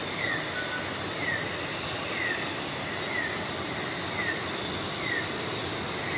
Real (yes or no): yes